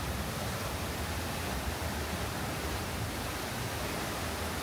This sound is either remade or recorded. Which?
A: remade